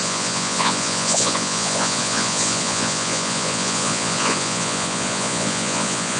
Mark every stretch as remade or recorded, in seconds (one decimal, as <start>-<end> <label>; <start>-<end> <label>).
0.0-6.2 remade